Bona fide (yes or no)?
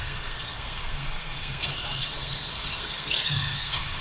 no